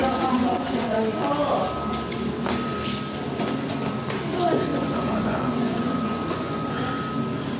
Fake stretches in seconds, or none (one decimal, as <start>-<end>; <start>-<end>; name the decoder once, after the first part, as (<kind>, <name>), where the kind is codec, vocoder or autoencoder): 0.0-1.0 (vocoder, Vocos); 4.7-6.9